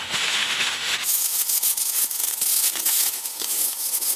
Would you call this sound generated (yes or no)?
yes